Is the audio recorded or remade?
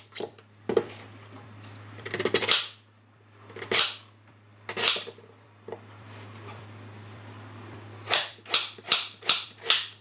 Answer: recorded